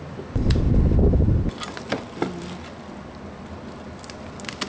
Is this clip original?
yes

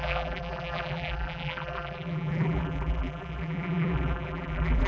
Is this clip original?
no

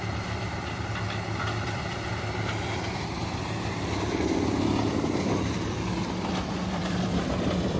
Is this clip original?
no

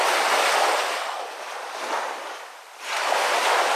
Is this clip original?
no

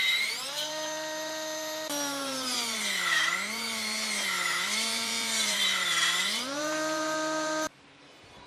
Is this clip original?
no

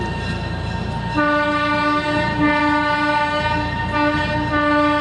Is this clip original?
yes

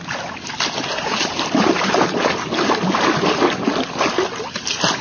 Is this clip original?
yes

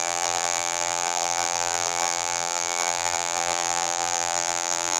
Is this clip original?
no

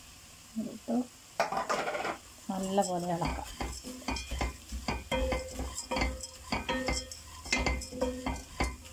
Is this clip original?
yes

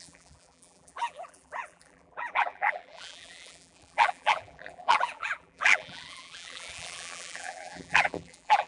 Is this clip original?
no